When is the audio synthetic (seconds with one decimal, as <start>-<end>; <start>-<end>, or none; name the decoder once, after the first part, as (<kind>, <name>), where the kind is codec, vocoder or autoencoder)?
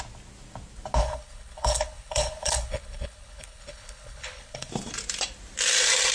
1.0-4.7 (codec, HILCodec)